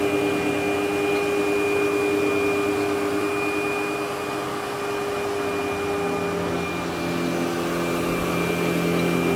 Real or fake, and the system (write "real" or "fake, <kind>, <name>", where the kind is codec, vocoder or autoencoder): real